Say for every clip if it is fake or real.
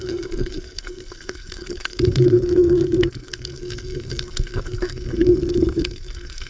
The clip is fake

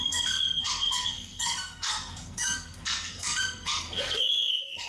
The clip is fake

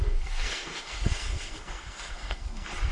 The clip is fake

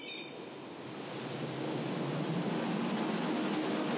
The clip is real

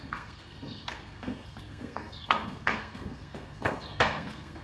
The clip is fake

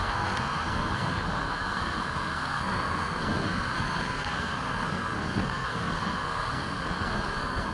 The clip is fake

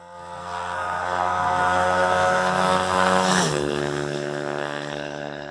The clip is fake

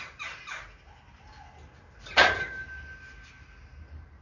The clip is real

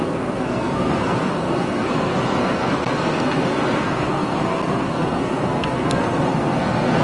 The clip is fake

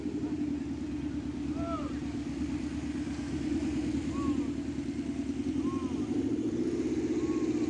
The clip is real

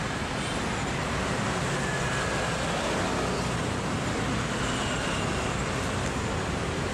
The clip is real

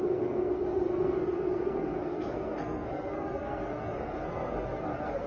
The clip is fake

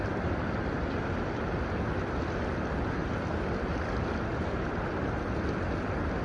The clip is real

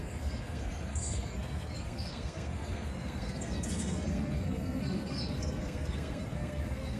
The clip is fake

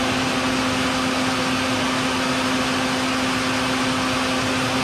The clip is real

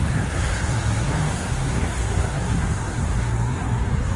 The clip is fake